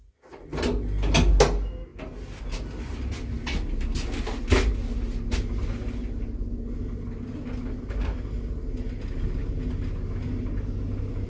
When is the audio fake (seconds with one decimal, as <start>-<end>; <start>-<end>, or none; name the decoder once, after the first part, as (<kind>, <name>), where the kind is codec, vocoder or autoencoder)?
none